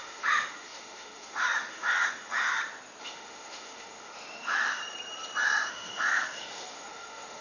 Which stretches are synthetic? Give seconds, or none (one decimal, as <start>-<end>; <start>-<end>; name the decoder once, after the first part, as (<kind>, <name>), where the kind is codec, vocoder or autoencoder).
0.0-2.5 (autoencoder, DAC-VAE); 3.0-4.8; 5.7-7.4